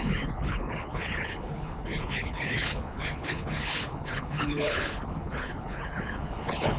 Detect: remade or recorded remade